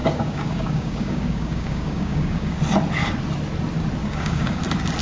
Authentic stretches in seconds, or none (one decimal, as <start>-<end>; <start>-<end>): 2.6-4.0; 4.6-5.0